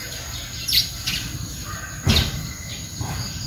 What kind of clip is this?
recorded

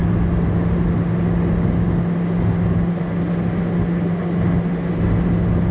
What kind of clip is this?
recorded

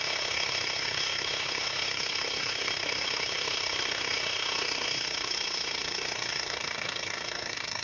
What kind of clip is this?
remade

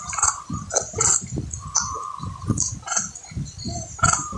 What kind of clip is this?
recorded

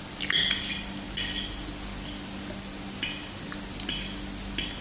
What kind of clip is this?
recorded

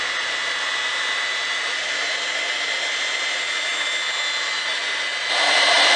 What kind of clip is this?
recorded